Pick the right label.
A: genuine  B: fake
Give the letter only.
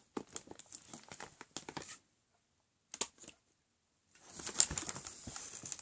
A